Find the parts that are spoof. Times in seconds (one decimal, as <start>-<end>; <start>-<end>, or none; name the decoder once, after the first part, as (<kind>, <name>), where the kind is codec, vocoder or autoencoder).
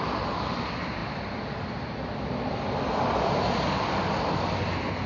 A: none